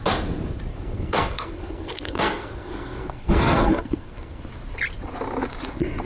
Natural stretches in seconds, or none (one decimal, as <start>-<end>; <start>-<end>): 0.0-0.7; 4.4-6.1